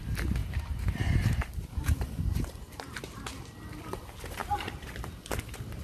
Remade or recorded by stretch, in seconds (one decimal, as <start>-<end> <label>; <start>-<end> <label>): 0.0-0.4 recorded; 0.4-2.9 remade; 2.9-4.4 recorded; 4.4-5.1 remade; 5.1-5.8 recorded